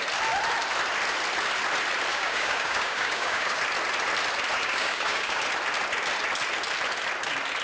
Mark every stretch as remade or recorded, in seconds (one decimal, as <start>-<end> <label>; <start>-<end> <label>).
0.0-2.1 recorded; 2.1-3.6 remade; 3.6-4.6 recorded; 4.6-5.4 remade; 5.4-7.6 recorded